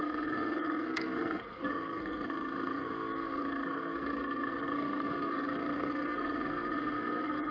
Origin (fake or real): fake